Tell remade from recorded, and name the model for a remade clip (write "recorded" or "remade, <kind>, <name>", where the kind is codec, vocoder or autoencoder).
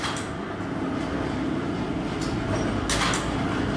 recorded